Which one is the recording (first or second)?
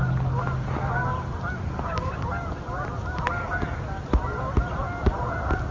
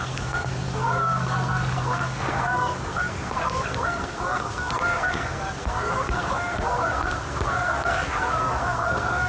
first